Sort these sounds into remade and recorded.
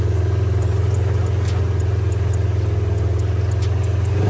recorded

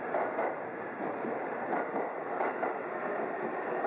recorded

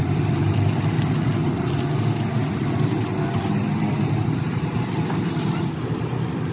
remade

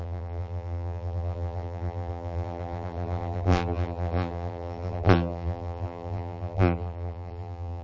remade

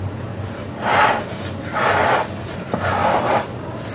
recorded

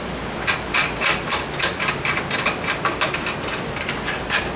recorded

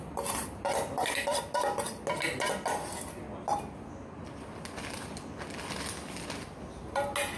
recorded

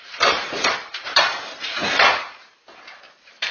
remade